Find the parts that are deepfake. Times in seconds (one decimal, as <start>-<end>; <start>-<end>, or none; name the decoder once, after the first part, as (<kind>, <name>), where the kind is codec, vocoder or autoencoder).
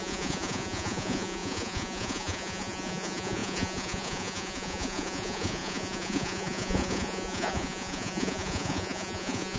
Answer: 0.0-9.6 (vocoder, Vocos)